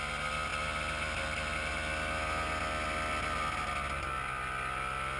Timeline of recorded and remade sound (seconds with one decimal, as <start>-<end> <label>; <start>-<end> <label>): 0.0-5.2 recorded